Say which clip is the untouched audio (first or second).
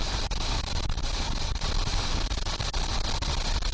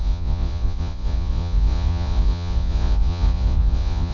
first